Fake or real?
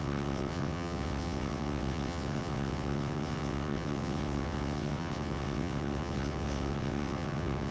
fake